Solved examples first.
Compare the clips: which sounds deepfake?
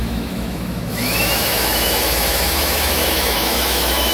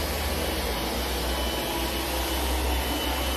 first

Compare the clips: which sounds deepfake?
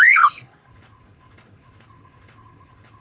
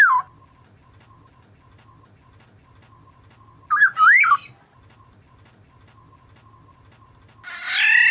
first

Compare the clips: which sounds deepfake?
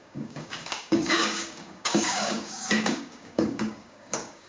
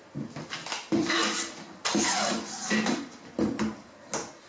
first